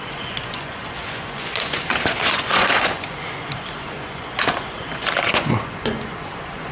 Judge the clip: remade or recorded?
remade